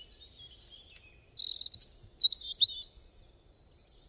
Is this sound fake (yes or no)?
no